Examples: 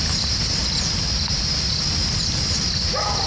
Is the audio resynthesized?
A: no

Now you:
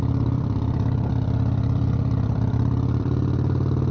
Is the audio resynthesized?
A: yes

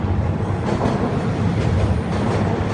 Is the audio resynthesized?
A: no